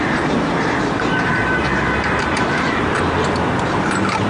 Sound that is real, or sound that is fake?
fake